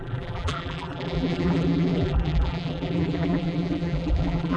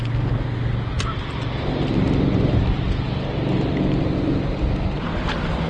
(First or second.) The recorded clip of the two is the second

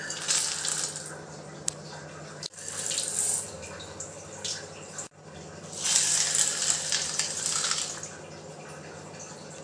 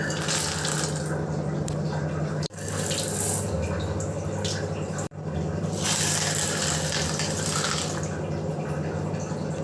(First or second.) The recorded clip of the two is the first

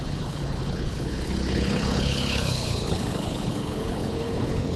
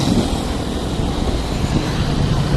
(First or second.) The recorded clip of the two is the second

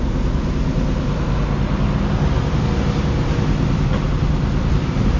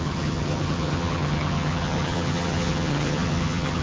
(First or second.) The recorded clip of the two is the first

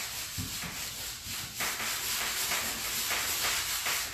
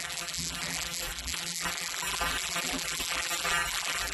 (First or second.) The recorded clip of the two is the first